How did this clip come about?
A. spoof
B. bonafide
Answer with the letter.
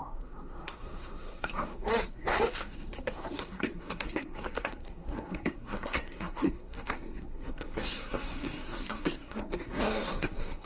A